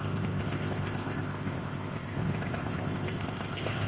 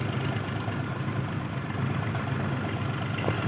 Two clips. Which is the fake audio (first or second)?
first